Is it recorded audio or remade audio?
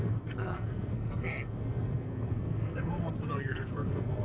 remade